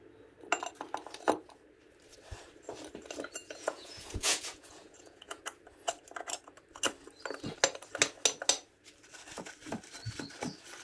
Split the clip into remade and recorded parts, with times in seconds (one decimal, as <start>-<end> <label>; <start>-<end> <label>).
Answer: 0.0-3.4 recorded; 3.4-5.4 remade; 5.4-10.8 recorded